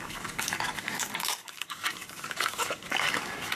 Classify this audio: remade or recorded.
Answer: remade